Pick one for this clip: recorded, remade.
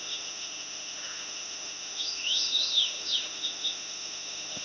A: remade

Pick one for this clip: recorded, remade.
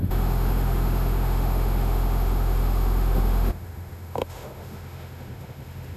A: remade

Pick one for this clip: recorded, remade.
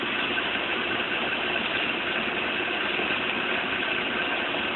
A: recorded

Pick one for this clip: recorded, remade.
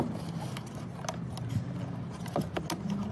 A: recorded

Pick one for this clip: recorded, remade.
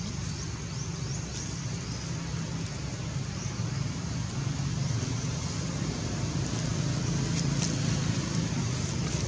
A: recorded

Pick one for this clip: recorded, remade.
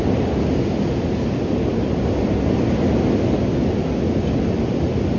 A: recorded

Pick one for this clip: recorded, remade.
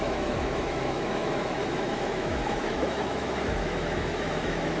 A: remade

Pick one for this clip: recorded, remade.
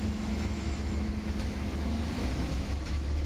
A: remade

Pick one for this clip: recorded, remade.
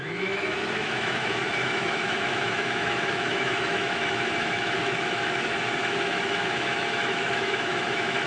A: remade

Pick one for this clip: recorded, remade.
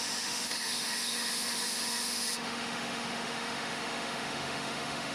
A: remade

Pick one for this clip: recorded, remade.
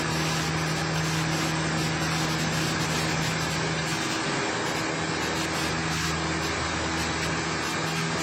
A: recorded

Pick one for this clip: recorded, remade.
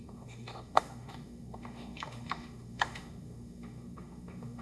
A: remade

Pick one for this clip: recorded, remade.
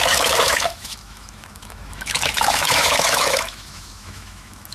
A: remade